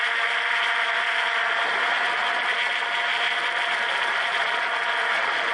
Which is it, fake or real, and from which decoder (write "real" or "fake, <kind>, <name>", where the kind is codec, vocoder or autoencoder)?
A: real